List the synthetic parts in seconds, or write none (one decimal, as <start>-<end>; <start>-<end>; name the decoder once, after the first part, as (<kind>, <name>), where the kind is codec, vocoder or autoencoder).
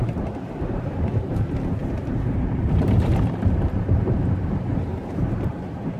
0.0-6.0 (vocoder, BigVGAN v2)